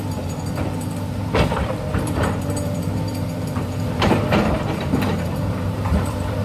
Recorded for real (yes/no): no